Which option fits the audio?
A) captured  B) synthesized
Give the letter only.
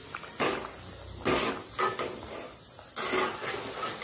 A